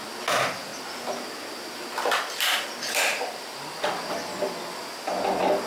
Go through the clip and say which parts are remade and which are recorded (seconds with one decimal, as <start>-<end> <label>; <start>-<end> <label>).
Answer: 0.0-5.7 recorded